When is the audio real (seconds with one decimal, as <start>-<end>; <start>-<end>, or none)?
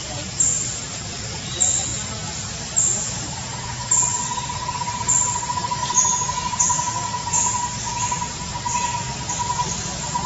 0.0-5.8; 8.0-10.3